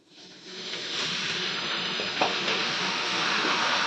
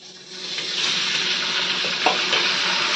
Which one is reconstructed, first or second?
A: first